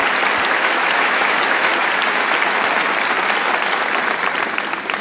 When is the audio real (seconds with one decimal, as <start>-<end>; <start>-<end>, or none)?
0.0-0.5; 1.7-5.0